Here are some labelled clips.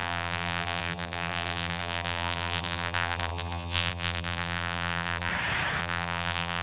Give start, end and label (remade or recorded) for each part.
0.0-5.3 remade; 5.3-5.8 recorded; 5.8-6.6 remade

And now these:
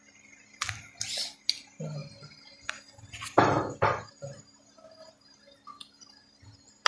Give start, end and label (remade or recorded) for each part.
0.0-6.9 recorded

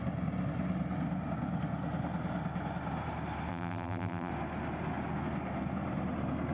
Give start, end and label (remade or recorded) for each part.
0.0-3.5 recorded; 3.5-4.3 remade; 4.3-6.5 recorded